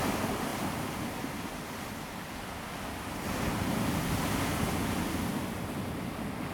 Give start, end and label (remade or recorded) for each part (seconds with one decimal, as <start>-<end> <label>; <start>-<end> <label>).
0.0-6.5 recorded